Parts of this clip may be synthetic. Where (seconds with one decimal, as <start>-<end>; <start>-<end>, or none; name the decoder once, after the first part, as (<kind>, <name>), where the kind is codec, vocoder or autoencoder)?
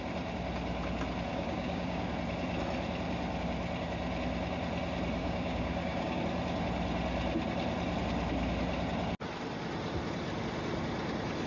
1.3-2.1 (codec, DAC); 5.2-6.2